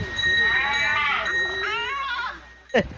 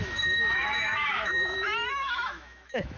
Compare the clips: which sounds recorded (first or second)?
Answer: first